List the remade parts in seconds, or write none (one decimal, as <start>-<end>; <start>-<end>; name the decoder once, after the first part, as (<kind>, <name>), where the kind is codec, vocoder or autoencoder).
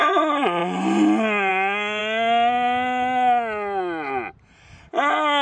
none